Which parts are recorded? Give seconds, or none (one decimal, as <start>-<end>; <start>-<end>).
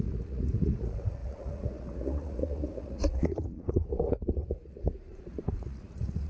none